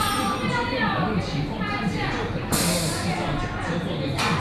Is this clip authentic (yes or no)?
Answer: yes